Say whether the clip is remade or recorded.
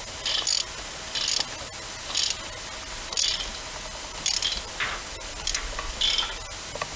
recorded